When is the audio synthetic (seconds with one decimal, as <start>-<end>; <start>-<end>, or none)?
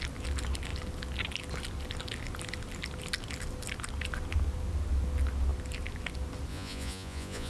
6.5-7.5